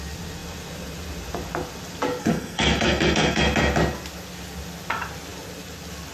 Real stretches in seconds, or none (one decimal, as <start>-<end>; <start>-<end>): 0.0-2.2; 3.4-6.1